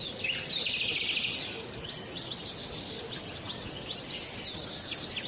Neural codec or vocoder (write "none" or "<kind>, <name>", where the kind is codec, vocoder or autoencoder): none